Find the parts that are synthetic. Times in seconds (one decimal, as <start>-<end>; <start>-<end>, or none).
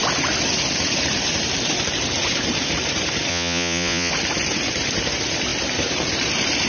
3.3-4.1